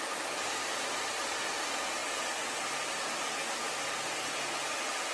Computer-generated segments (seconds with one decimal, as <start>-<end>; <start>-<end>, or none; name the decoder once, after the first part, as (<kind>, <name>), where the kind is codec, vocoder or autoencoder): none